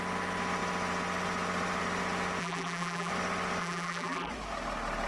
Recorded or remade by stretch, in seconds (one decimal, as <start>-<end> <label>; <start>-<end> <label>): 0.0-2.4 recorded; 2.4-3.1 remade; 3.1-3.6 recorded; 3.6-4.3 remade; 4.3-5.1 recorded